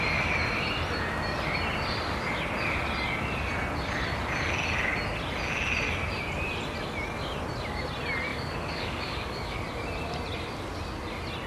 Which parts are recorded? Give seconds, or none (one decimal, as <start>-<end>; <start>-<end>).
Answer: 0.0-8.3; 9.6-11.5